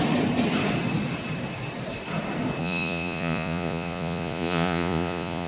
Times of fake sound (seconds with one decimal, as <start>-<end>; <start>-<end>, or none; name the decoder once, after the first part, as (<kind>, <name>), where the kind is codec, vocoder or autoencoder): 2.6-5.5 (vocoder, Vocos)

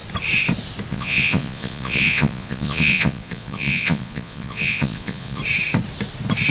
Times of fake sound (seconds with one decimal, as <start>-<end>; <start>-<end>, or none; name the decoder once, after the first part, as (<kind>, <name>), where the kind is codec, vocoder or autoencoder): 0.9-5.4 (vocoder, Vocos)